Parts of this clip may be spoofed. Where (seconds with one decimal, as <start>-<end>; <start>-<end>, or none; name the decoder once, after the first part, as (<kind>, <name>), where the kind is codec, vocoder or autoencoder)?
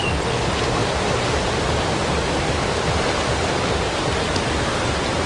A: none